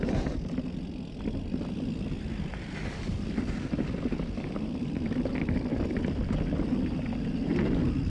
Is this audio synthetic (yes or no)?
no